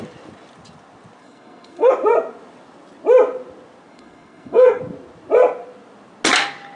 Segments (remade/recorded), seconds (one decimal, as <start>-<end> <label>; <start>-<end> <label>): 0.0-1.2 recorded; 1.2-1.9 remade; 1.9-3.9 recorded; 3.9-4.8 remade; 4.8-6.8 recorded